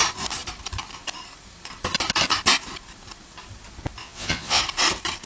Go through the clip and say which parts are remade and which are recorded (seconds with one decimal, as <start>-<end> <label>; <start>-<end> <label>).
0.0-4.0 recorded; 4.0-4.6 remade; 4.6-5.3 recorded